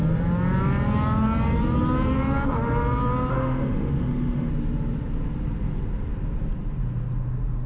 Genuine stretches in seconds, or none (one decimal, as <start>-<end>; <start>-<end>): 0.0-3.3; 4.5-7.7